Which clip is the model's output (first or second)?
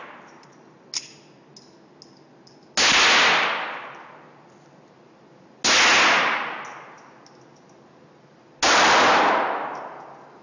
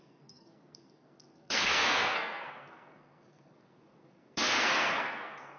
second